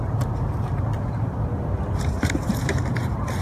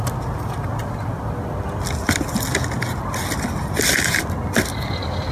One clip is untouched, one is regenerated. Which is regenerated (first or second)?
first